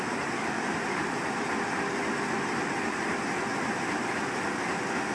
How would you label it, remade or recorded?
recorded